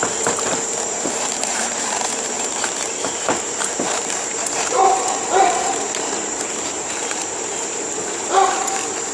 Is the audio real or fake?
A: fake